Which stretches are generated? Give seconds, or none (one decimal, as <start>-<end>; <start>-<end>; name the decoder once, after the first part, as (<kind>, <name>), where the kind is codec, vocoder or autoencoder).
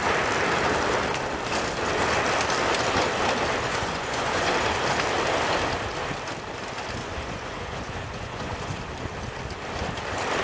3.7-4.5 (vocoder, Vocos); 7.0-8.8